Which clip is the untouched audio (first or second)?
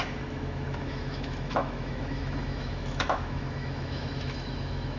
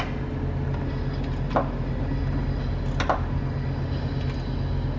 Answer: second